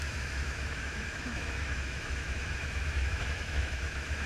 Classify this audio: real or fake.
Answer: fake